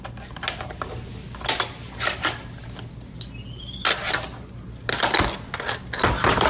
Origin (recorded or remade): recorded